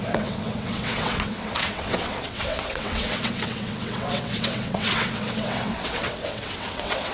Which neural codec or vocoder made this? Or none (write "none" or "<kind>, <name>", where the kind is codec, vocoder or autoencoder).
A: vocoder, WaveNeXt